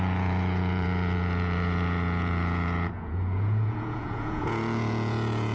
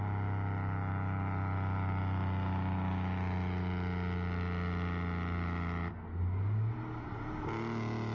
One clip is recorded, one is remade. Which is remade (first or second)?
first